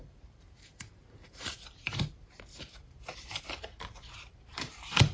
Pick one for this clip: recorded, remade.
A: remade